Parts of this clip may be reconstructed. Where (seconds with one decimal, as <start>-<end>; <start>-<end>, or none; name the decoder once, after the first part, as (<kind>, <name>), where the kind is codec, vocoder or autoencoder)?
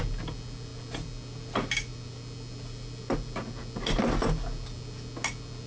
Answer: none